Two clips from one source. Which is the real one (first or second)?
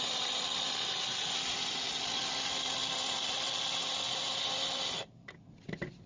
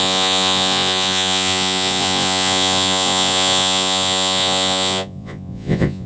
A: first